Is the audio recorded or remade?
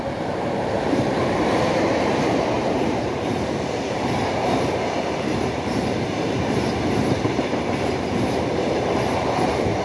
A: remade